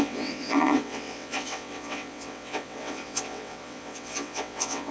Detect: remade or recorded remade